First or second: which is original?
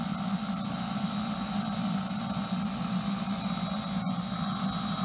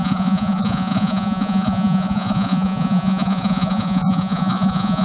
first